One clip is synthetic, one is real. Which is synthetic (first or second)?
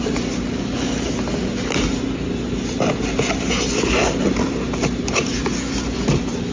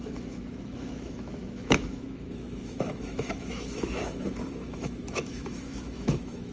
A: second